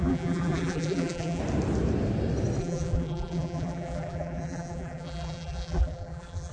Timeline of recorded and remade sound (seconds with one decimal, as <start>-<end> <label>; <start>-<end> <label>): 0.0-1.4 remade; 1.4-2.6 recorded; 2.6-6.5 remade

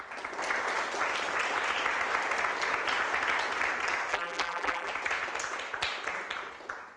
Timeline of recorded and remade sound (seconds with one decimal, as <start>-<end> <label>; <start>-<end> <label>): 0.0-4.1 recorded; 4.1-4.9 remade; 4.9-7.0 recorded

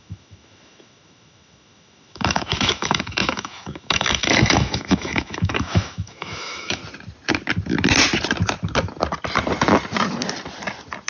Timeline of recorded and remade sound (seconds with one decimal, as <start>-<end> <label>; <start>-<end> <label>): 0.0-6.8 remade; 6.8-11.1 recorded

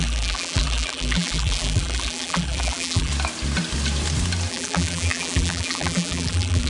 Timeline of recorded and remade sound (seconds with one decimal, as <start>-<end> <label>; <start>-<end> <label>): 0.0-3.1 remade; 3.1-4.5 recorded; 4.5-6.7 remade